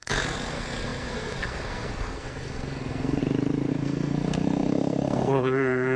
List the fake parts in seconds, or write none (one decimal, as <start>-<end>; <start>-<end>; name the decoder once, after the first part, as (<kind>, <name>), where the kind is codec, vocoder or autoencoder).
0.0-3.2 (codec, SNAC); 3.7-6.0

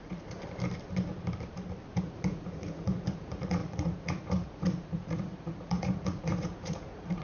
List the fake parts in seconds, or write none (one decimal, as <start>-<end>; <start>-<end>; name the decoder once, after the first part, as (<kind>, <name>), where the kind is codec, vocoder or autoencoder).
0.0-0.4 (vocoder, Vocos); 2.0-7.2

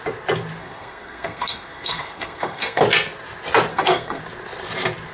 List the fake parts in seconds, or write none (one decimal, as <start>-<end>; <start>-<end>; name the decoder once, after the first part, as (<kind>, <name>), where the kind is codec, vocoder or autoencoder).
0.6-2.8 (codec, SNAC); 3.7-4.2

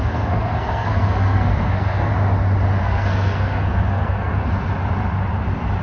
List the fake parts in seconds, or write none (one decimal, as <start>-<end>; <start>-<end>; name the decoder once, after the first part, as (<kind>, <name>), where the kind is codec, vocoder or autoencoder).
0.0-2.1 (codec, SNAC); 2.8-4.3

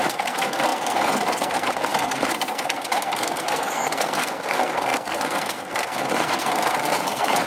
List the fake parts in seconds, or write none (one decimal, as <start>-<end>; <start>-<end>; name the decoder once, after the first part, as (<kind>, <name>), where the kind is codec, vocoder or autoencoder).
0.0-7.5 (codec, SNAC)

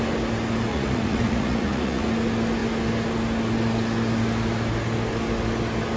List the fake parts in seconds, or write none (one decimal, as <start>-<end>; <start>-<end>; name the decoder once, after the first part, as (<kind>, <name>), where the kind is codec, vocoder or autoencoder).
0.7-2.1 (vocoder, Vocos)